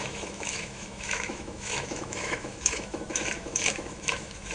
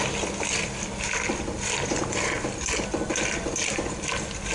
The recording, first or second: second